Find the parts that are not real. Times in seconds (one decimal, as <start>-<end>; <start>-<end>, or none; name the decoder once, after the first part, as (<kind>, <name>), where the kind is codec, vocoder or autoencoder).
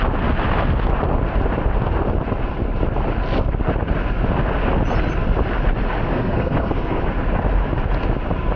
6.1-7.0 (codec, SNAC)